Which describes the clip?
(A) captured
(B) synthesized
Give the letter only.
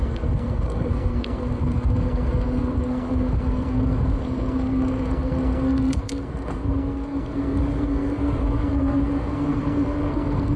B